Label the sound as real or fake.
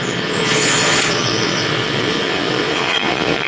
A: fake